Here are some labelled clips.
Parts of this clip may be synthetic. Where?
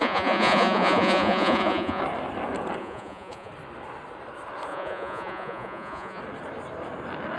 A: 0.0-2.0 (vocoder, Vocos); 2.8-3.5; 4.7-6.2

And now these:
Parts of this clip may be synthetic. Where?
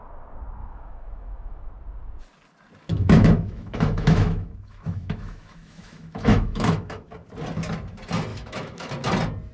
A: 0.6-1.7 (autoencoder, DAC-VAE); 2.9-7.1; 8.3-8.9